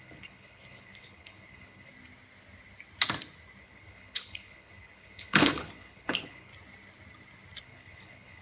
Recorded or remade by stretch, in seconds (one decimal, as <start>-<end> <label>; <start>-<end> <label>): 0.0-1.9 remade; 1.9-3.6 recorded; 3.6-6.5 remade; 6.5-7.6 recorded; 7.6-8.4 remade